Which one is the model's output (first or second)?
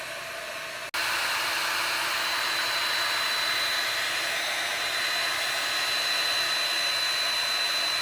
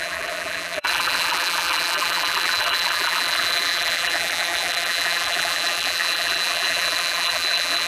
second